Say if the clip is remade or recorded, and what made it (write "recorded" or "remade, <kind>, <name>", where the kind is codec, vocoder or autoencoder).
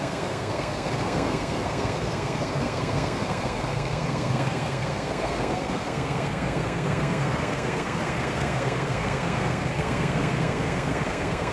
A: remade, codec, SNAC